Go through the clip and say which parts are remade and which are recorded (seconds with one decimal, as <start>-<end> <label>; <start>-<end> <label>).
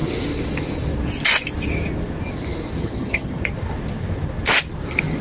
0.0-2.8 recorded; 2.8-3.4 remade; 3.4-5.2 recorded